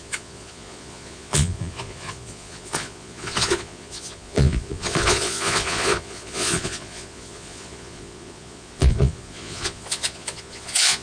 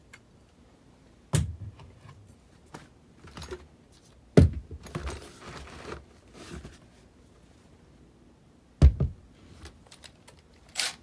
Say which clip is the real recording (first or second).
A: second